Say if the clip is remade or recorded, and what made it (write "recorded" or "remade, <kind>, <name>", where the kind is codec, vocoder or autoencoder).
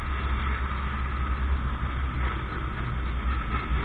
recorded